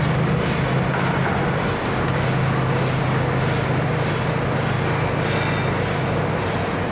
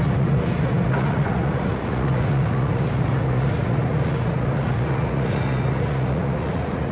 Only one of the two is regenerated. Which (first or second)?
second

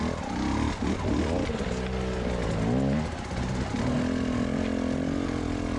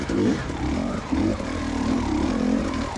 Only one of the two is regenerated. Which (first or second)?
second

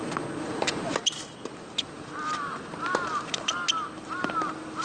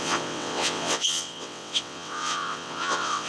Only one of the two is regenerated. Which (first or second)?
second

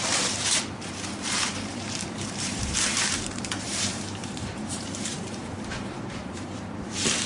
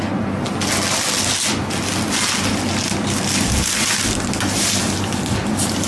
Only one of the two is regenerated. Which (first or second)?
first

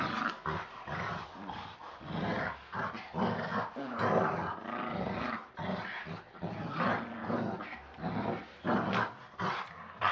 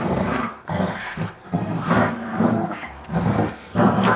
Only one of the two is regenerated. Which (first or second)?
second